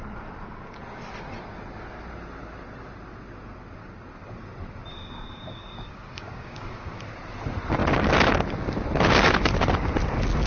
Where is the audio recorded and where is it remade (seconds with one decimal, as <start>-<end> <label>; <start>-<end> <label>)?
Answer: 0.0-4.9 recorded; 4.9-7.0 remade; 7.0-10.5 recorded